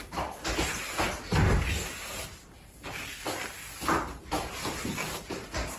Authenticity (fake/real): real